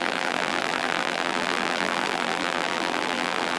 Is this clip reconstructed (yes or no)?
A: yes